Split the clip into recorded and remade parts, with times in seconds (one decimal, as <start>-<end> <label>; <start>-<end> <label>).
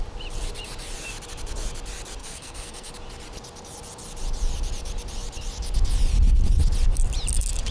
0.0-2.2 recorded; 2.2-2.9 remade; 2.9-7.7 recorded